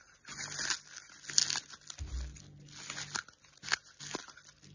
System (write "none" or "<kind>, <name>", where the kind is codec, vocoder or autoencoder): none